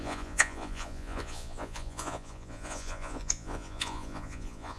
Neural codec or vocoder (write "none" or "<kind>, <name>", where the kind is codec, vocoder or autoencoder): vocoder, Vocos